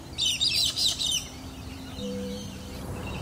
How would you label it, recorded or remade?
remade